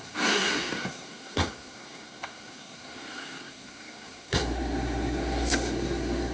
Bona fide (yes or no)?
no